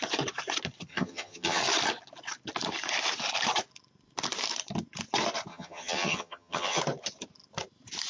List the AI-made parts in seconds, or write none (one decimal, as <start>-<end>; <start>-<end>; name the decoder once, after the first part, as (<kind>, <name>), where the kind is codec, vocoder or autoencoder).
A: 0.9-1.6 (vocoder, HiFi-GAN); 5.5-6.8